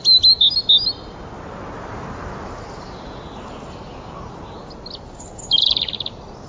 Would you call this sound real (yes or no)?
yes